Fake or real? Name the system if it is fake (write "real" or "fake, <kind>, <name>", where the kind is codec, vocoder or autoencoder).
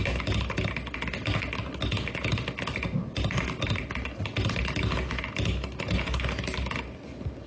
real